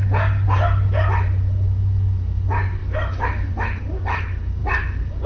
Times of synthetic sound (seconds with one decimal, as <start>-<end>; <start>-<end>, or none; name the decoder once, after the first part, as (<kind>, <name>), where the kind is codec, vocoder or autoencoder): 2.8-3.8 (autoencoder, DAC-VAE)